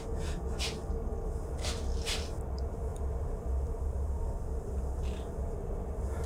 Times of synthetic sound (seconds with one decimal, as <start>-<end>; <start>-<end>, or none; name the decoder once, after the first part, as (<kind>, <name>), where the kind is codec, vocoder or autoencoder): 0.8-1.5 (vocoder, BigVGAN v2); 2.9-4.8